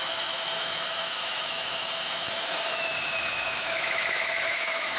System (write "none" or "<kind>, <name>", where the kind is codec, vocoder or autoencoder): autoencoder, DAC-VAE